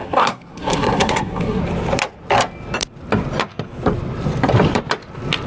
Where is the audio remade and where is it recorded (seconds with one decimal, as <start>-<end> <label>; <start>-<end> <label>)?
0.0-1.6 remade; 1.6-5.5 recorded